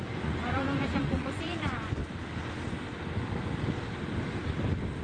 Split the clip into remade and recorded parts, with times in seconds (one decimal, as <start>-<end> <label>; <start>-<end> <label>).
0.0-2.0 remade; 2.0-5.0 recorded